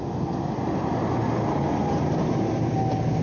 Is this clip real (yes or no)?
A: yes